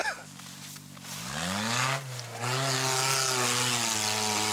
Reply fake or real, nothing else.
real